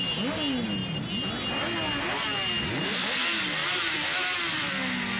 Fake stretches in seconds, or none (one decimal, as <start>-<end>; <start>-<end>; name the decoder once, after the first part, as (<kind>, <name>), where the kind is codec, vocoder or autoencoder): 3.6-4.7 (vocoder, BigVGAN v2)